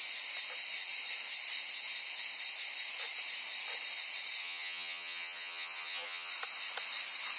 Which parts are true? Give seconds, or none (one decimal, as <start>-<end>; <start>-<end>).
0.0-4.4; 6.3-7.4